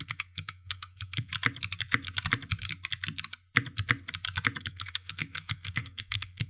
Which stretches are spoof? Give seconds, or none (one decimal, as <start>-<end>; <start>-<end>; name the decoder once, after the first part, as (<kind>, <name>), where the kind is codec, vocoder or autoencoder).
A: 0.0-1.3 (codec, SNAC); 4.6-6.5